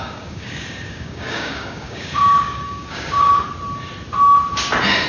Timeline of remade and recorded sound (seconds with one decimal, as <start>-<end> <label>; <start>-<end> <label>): 0.0-3.3 remade; 3.3-5.1 recorded